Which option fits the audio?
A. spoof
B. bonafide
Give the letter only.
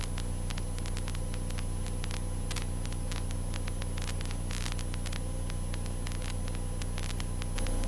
B